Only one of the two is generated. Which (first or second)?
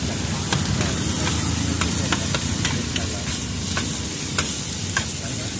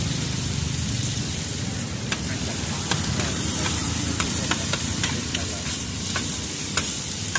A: second